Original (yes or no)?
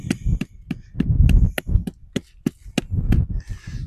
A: yes